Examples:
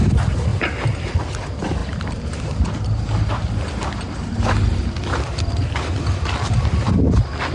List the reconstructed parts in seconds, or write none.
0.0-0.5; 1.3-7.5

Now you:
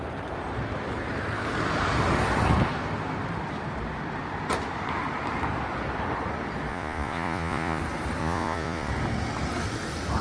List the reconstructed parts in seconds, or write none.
6.7-7.8; 8.2-8.9

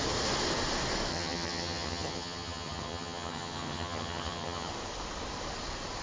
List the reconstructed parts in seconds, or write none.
1.1-4.7

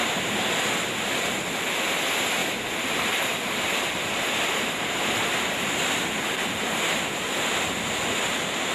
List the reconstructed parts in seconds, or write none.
0.0-0.5; 2.4-7.4